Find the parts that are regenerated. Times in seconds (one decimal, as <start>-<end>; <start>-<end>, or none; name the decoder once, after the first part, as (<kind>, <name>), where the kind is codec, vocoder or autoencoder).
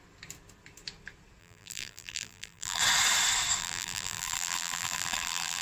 1.4-2.8 (vocoder, BigVGAN v2); 3.6-5.6